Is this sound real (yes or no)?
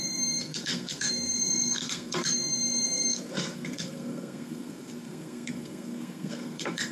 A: no